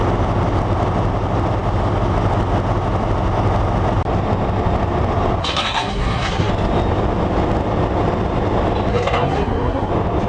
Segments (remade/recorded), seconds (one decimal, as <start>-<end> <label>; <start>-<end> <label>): 0.0-5.4 recorded; 5.4-6.5 remade; 6.5-8.9 recorded; 8.9-9.9 remade; 9.9-10.3 recorded